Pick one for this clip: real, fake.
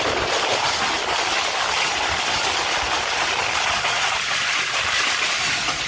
real